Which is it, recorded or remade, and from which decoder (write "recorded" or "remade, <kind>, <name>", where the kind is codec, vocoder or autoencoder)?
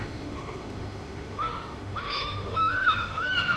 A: remade, autoencoder, DAC-VAE